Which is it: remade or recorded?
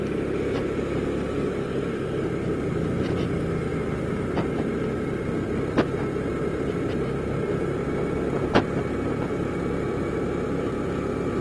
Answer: recorded